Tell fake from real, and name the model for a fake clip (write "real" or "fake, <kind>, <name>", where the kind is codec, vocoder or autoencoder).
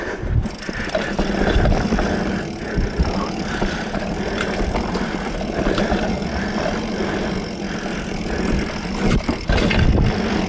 fake, vocoder, BigVGAN v2